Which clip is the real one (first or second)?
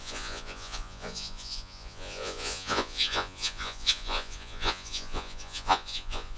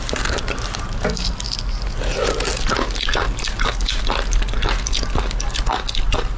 second